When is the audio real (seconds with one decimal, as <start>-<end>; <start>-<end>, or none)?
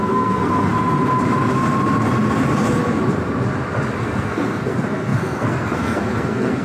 0.7-4.0